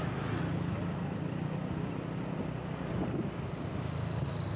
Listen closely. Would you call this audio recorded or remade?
recorded